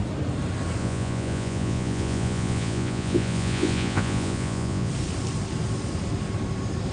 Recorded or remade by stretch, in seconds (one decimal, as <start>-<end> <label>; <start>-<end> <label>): 0.0-0.8 recorded; 0.8-4.9 remade; 4.9-6.9 recorded